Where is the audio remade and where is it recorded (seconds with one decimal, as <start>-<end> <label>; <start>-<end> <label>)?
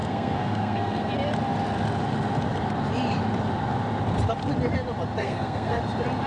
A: 0.0-1.1 remade; 1.1-5.2 recorded; 5.2-5.8 remade; 5.8-6.3 recorded